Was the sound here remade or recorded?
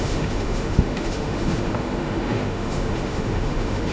remade